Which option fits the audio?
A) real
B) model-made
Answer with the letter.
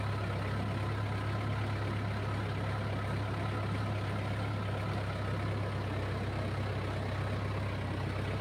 A